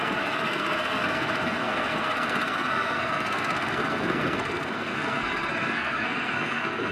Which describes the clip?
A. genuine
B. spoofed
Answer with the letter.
B